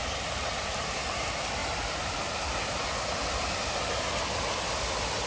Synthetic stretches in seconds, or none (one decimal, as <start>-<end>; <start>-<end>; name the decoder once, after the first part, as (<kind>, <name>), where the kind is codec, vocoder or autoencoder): none